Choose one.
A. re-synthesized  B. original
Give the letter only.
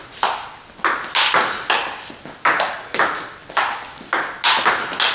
B